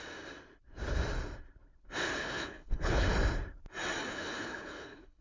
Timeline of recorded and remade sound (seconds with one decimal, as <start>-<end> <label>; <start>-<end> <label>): 0.0-2.2 recorded; 2.2-3.1 remade; 3.1-4.1 recorded; 4.1-5.2 remade